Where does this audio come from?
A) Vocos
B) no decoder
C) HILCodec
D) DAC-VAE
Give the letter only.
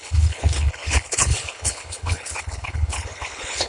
C